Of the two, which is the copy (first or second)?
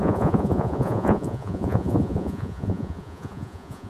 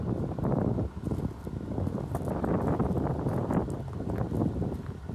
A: first